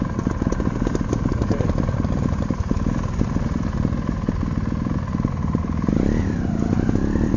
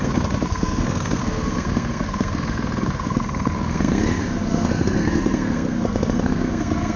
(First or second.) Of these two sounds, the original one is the first